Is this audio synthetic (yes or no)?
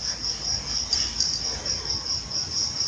no